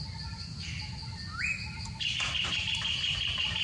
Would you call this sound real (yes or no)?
yes